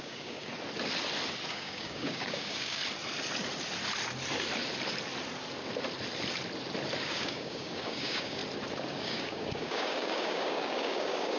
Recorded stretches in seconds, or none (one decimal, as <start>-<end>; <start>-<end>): 0.5-1.5; 2.8-7.0; 8.4-9.0